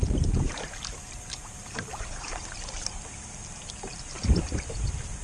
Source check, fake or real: fake